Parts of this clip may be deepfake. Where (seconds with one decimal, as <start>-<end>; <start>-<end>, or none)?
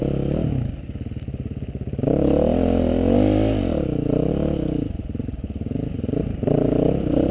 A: none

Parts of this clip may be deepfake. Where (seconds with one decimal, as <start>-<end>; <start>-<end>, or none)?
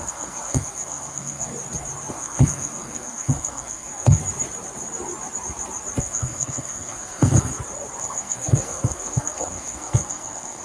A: 0.0-1.5; 2.1-4.2; 6.0-7.5; 8.0-10.6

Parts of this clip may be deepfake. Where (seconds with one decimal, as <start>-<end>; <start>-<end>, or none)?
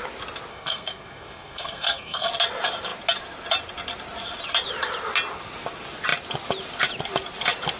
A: 0.5-2.3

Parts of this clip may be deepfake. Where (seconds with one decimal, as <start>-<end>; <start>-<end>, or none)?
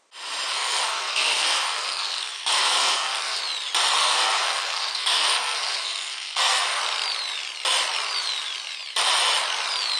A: 0.5-3.4; 4.0-6.8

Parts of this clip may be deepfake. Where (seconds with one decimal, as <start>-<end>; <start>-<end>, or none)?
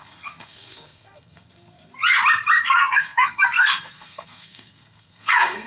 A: 0.0-2.0; 2.6-5.7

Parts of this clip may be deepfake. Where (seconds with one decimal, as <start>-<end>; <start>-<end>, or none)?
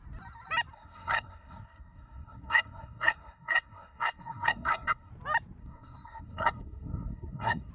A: 0.7-5.1; 5.6-7.7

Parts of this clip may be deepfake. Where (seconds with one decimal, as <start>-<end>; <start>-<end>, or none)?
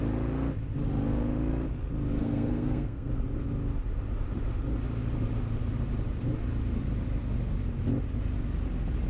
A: 2.2-3.1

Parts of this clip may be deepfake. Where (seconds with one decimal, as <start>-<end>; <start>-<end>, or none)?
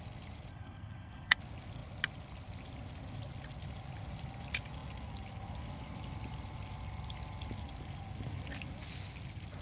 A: 0.5-1.4